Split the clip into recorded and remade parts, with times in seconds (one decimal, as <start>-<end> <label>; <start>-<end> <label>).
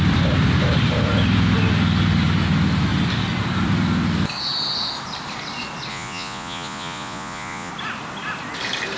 0.0-5.9 recorded; 5.9-7.7 remade; 7.7-9.0 recorded